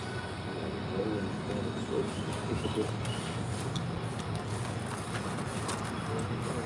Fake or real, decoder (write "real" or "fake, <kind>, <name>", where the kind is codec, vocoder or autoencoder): real